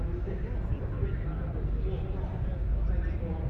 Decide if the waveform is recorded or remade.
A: recorded